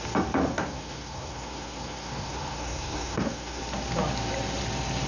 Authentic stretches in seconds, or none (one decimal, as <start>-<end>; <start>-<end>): 0.0-0.5; 3.6-5.1